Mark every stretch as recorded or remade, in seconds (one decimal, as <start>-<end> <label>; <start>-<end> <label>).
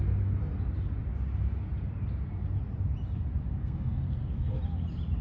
0.0-3.6 recorded; 3.6-4.6 remade; 4.6-5.2 recorded